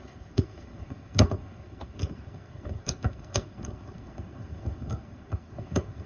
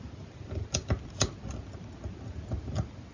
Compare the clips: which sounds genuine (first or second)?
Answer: second